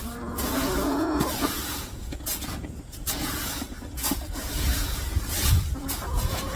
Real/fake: fake